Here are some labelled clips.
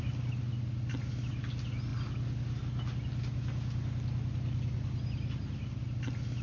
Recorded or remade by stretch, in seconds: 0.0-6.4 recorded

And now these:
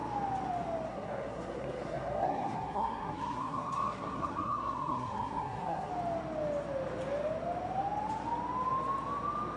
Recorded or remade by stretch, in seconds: 0.0-0.9 recorded; 0.9-5.9 remade; 5.9-9.6 recorded

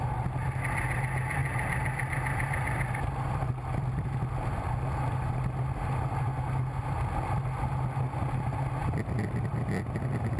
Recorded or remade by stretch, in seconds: 0.0-10.4 recorded